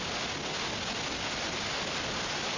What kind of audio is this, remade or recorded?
recorded